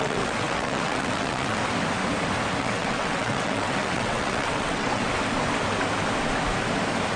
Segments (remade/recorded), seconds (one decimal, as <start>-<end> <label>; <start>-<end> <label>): 0.0-1.6 remade; 1.6-2.6 recorded; 2.6-5.0 remade; 5.0-7.2 recorded